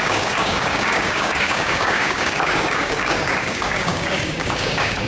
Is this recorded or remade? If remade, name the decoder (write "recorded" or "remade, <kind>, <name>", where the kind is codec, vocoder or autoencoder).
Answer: remade, codec, DAC